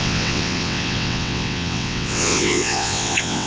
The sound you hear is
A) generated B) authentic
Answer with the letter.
A